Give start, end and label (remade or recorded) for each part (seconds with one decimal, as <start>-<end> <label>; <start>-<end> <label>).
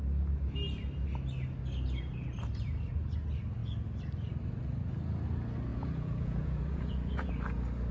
0.0-5.7 recorded; 5.7-7.3 remade; 7.3-7.9 recorded